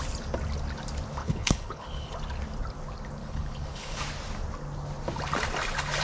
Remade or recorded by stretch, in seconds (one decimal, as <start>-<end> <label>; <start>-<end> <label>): 0.0-1.2 recorded; 1.2-2.1 remade; 2.1-3.2 recorded; 3.2-4.0 remade; 4.0-6.0 recorded